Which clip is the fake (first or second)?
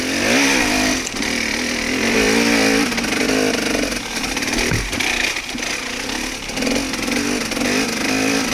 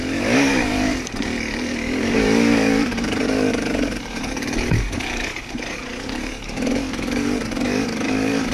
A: second